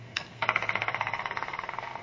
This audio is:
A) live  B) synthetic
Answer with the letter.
B